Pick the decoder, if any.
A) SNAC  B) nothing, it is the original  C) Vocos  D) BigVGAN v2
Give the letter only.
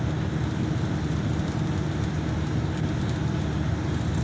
B